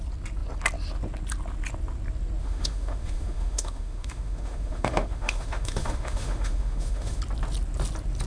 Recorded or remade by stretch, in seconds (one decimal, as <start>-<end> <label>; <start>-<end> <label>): 0.0-2.4 recorded; 2.4-7.2 remade; 7.2-8.3 recorded